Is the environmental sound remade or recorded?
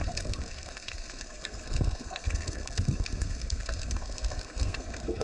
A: remade